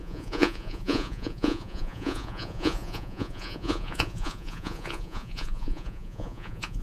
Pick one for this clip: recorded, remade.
remade